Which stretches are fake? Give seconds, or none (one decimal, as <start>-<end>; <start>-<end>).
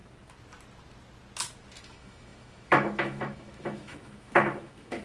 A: 1.8-5.0